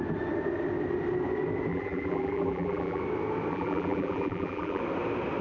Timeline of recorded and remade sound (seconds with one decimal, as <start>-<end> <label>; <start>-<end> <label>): 0.0-1.7 recorded; 1.7-3.0 remade; 3.0-3.5 recorded; 3.5-4.8 remade; 4.8-5.4 recorded